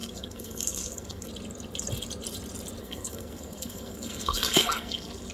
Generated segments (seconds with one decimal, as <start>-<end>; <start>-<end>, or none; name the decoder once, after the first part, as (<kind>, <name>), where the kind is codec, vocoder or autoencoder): 0.0-1.3 (codec, SNAC); 2.8-5.3